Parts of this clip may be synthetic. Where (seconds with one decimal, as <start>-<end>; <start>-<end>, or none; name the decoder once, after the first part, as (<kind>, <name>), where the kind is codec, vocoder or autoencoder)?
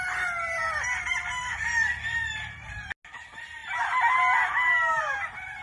none